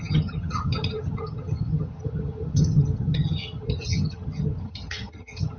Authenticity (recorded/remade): remade